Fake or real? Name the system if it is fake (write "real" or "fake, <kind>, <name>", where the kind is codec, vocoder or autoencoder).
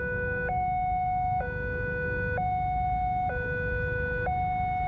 real